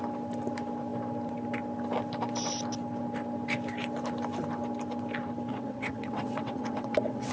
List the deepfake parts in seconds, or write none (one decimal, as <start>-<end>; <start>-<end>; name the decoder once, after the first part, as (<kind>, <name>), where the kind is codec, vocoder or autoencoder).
5.5-7.3 (vocoder, WaveNeXt)